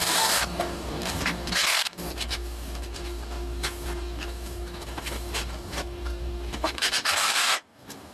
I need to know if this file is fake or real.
fake